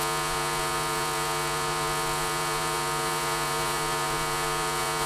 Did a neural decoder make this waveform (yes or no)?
yes